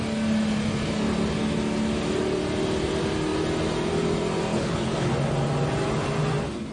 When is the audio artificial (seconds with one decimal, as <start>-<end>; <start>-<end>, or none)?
4.5-5.1